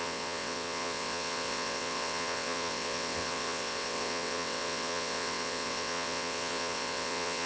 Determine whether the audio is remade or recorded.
remade